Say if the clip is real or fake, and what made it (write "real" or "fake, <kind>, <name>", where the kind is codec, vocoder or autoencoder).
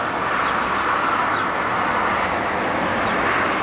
real